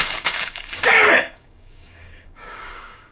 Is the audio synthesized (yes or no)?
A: yes